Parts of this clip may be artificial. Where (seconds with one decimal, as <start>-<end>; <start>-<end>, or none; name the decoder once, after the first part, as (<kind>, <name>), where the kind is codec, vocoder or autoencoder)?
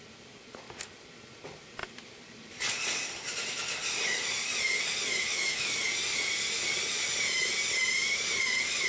5.3-5.8 (autoencoder, DAC-VAE)